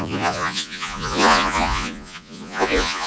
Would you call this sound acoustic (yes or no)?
no